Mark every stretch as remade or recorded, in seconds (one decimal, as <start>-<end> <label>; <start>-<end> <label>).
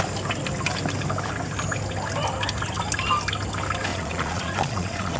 0.0-3.9 recorded; 3.9-5.2 remade